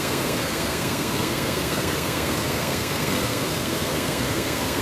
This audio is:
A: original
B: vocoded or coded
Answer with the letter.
B